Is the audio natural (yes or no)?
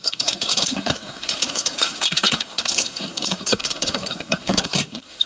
no